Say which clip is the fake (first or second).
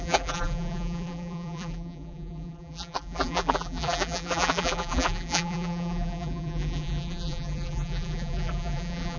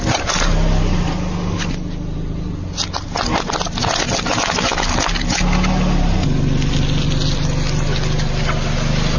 first